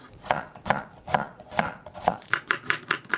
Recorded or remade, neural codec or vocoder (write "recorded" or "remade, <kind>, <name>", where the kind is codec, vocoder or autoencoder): remade, vocoder, Vocos